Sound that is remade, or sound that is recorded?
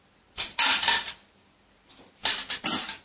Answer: recorded